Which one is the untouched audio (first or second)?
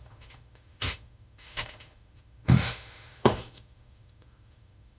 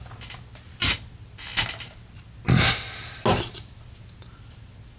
second